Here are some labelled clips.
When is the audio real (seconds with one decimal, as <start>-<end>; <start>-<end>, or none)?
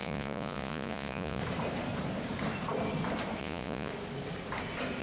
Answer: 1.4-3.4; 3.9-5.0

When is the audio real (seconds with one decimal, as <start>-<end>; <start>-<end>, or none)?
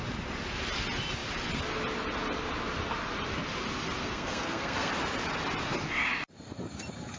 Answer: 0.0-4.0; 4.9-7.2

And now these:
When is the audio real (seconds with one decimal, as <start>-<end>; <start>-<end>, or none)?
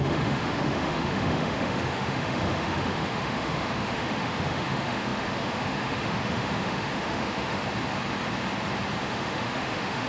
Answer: 7.6-9.0